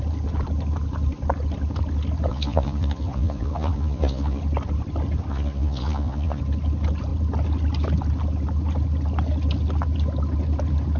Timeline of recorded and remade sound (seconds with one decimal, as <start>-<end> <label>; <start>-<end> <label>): 0.0-2.3 recorded; 2.3-4.4 remade; 4.4-5.3 recorded; 5.3-6.4 remade; 6.4-11.0 recorded